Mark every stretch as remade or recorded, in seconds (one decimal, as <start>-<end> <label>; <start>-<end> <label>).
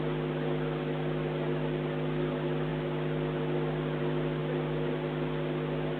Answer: 0.0-6.0 recorded